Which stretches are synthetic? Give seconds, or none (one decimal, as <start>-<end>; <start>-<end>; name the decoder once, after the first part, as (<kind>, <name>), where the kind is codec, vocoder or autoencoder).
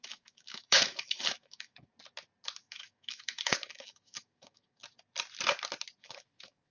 0.0-1.9 (autoencoder, DAC-VAE); 2.6-4.8; 6.0-6.7